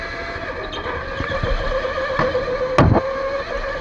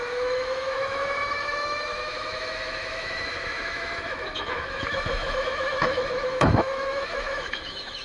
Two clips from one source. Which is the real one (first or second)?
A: first